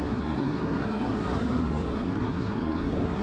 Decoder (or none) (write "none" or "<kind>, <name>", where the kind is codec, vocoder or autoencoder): codec, SNAC